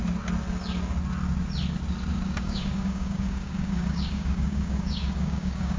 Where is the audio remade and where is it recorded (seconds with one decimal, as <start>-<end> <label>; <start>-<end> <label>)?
0.0-2.1 recorded; 2.1-5.8 remade